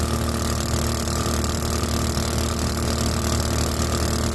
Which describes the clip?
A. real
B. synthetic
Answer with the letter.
A